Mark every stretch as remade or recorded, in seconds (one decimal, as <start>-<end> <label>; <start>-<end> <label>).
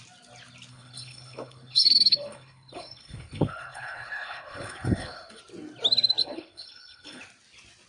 0.0-0.7 recorded; 0.7-5.4 remade; 5.4-6.2 recorded; 6.2-7.2 remade; 7.2-7.9 recorded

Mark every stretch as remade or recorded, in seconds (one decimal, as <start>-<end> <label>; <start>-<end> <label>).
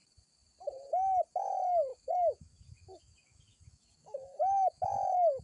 0.0-1.9 recorded; 1.9-5.4 remade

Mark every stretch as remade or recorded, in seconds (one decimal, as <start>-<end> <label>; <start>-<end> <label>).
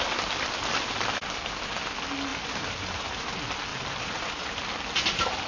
0.0-2.3 recorded; 2.3-3.3 remade; 3.3-3.7 recorded; 3.7-4.6 remade; 4.6-5.5 recorded